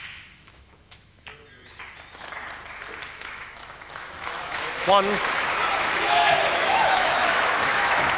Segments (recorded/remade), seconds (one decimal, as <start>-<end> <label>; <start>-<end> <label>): 0.0-1.3 remade; 1.3-3.0 recorded; 3.0-8.2 remade